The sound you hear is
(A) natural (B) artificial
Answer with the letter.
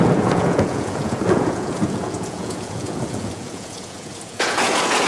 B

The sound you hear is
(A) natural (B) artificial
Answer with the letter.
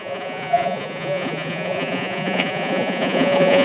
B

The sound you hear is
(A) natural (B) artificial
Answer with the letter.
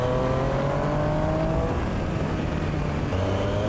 A